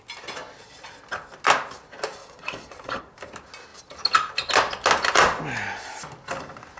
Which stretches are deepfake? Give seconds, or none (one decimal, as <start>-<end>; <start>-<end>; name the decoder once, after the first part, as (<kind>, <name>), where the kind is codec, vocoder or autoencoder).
2.2-3.0 (vocoder, Vocos)